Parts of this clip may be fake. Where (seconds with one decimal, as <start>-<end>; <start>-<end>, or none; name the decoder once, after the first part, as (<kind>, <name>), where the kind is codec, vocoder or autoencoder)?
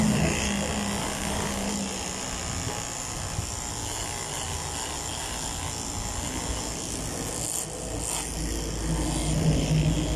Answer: 1.0-1.7 (codec, DAC)